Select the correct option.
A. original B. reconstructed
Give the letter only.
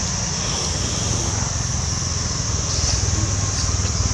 A